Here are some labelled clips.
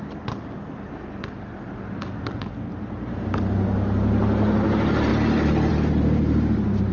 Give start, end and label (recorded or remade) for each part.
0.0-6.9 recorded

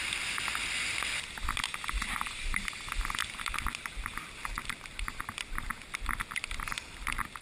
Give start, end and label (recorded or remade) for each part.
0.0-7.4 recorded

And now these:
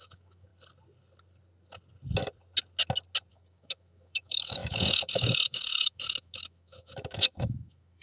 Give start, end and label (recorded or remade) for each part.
0.0-0.5 remade; 0.5-3.3 recorded; 3.3-8.0 remade

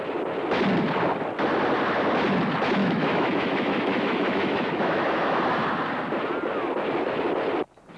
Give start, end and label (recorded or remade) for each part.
0.0-2.8 recorded; 2.8-5.4 remade; 5.4-8.0 recorded